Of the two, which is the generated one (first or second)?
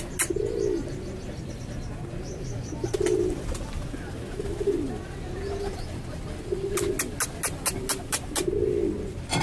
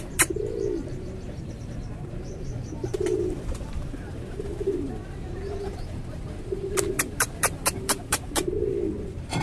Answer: second